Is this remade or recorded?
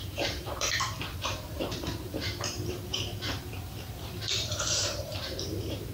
remade